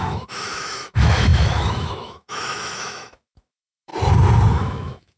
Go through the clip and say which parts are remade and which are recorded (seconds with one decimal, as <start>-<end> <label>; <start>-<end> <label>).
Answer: 0.0-3.9 remade; 3.9-4.5 recorded; 4.5-5.2 remade